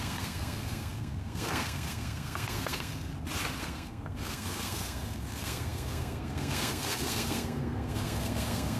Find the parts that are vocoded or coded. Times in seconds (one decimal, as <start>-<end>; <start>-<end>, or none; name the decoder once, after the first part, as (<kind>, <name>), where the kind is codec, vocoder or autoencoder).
0.0-3.1 (codec, SNAC); 3.6-8.8